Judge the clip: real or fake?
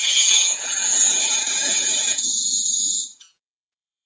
fake